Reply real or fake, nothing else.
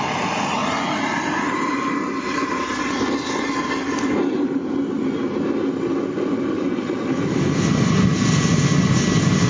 real